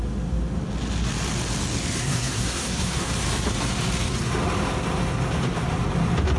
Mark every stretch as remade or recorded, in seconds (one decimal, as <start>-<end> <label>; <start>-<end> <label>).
0.0-2.0 recorded; 2.0-3.1 remade; 3.1-6.4 recorded